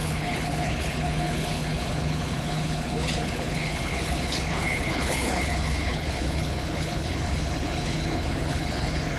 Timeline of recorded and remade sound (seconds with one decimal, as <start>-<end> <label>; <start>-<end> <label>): 0.0-9.2 remade